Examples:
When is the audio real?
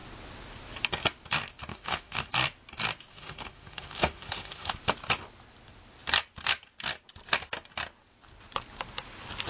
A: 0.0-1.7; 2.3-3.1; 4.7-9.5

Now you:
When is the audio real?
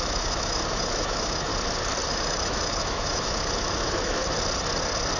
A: 1.5-2.1; 4.2-5.2